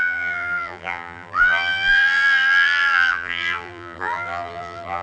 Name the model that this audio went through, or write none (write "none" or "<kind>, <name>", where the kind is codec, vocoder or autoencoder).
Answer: vocoder, BigVGAN v2